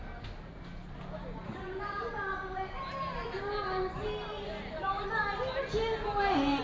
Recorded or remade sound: recorded